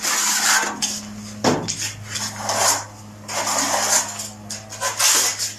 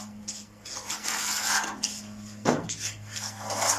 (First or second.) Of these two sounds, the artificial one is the second